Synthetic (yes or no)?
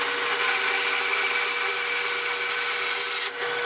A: no